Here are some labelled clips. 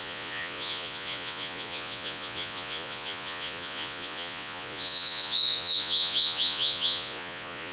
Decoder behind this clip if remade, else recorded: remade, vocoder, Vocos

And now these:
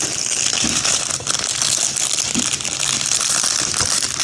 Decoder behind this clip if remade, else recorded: recorded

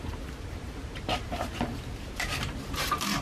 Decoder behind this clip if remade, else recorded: remade, vocoder, BigVGAN v2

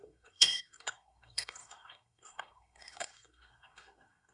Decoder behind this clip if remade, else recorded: remade, codec, SNAC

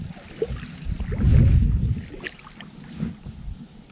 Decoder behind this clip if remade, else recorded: recorded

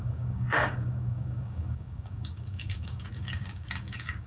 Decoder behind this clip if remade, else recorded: remade, codec, DAC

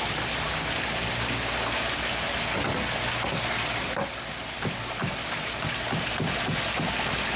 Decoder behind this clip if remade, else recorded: recorded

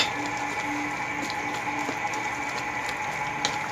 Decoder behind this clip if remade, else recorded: recorded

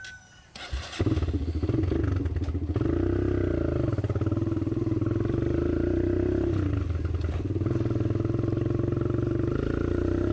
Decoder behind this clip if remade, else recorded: recorded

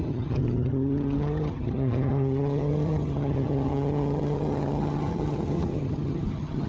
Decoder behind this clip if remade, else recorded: remade, vocoder, HiFi-GAN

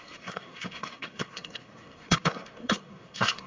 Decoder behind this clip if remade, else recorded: remade, codec, SNAC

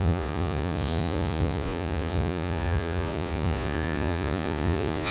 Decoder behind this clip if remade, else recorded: remade, vocoder, Vocos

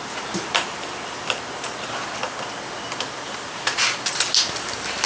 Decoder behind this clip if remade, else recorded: recorded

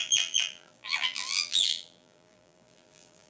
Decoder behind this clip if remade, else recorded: remade, vocoder, BigVGAN v2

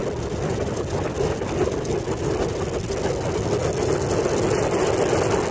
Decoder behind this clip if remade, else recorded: recorded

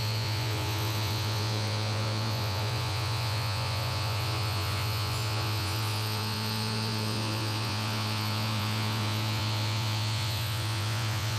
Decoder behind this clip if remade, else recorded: remade, vocoder, Vocos